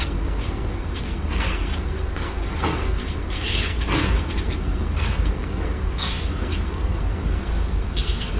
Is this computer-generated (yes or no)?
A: yes